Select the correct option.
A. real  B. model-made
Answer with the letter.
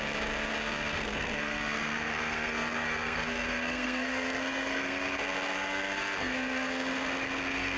B